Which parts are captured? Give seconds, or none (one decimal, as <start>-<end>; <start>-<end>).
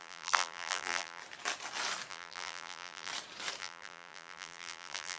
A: 1.2-2.1; 3.1-3.6